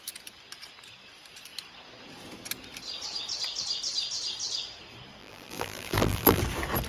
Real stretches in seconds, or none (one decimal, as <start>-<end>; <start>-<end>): 0.0-5.2; 6.4-6.9

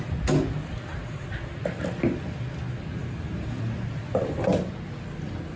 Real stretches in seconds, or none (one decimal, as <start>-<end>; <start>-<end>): 0.0-0.9; 1.7-3.0; 3.6-5.6

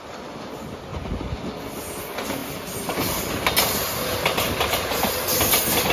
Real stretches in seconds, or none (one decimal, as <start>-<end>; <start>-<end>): 0.0-2.4; 5.1-5.9

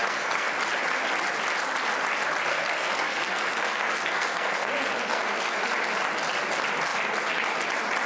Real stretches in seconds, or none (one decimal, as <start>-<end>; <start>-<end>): 0.5-2.5; 5.6-8.1